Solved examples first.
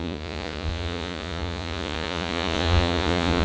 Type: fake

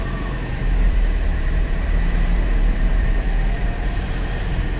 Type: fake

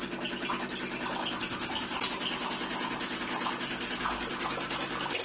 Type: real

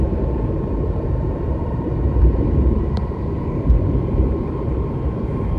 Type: fake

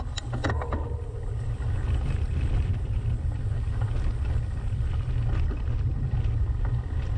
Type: real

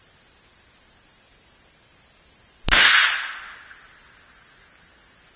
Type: real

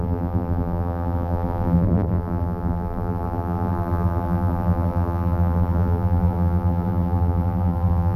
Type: fake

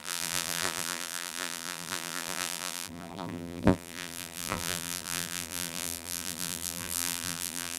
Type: fake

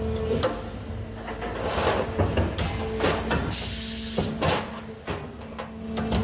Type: real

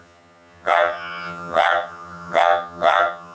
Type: fake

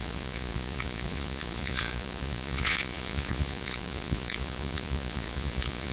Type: fake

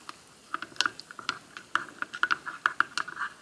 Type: real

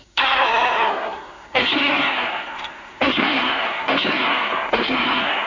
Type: fake